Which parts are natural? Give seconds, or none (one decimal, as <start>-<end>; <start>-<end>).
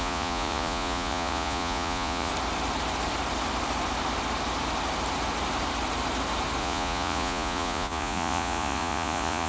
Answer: 2.3-6.6